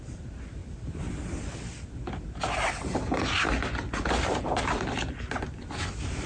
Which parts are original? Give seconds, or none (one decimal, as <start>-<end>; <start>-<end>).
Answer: 0.0-6.3